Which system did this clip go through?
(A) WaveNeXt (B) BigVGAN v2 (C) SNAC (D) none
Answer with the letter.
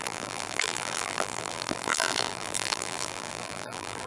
B